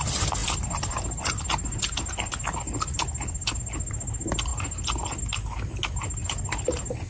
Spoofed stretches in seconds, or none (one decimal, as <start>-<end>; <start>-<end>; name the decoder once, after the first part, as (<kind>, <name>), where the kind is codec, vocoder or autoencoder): none